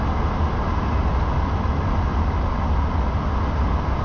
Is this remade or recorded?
recorded